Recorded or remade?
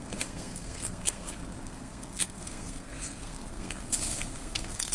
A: remade